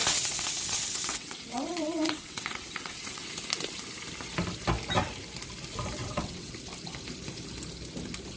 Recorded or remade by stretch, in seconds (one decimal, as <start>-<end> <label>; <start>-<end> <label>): 0.0-3.3 remade; 3.3-6.0 recorded; 6.0-6.5 remade; 6.5-8.4 recorded